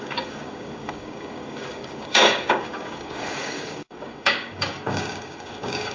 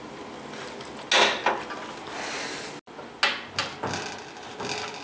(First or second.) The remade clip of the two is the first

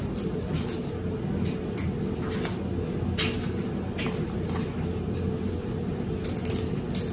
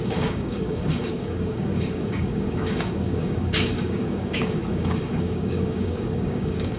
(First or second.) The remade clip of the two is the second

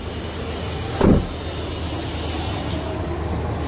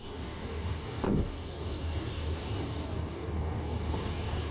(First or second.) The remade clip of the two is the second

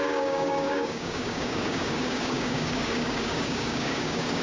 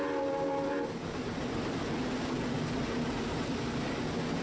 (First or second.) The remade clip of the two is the first